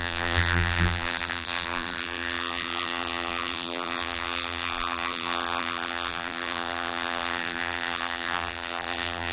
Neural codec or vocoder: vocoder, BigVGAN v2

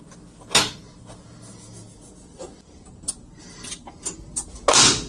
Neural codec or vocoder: none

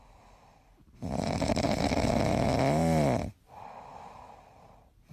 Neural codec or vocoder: none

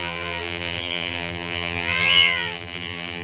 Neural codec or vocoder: vocoder, BigVGAN v2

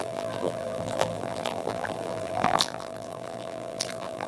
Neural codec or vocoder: vocoder, BigVGAN v2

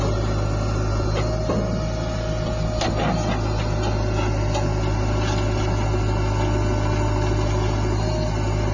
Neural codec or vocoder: none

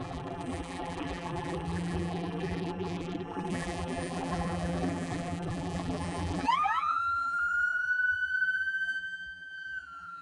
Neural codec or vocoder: vocoder, BigVGAN v2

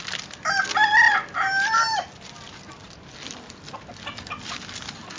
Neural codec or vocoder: none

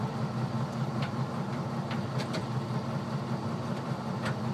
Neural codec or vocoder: vocoder, BigVGAN v2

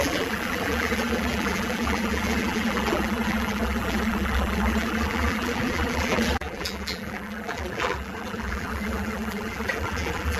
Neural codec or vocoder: vocoder, BigVGAN v2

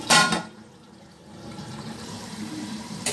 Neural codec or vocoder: vocoder, BigVGAN v2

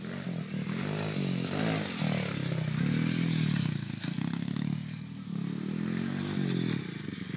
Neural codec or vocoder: none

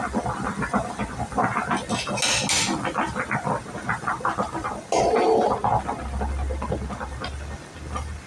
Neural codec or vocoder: none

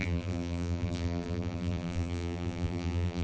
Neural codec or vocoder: vocoder, BigVGAN v2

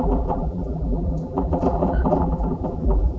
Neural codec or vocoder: vocoder, BigVGAN v2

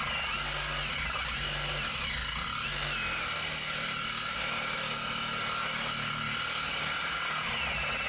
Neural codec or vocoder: none